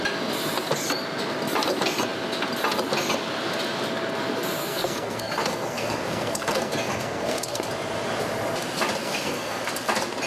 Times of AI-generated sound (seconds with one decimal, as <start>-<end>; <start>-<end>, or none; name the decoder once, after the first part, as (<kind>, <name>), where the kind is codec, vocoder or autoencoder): 4.6-7.7 (codec, SNAC); 9.0-9.6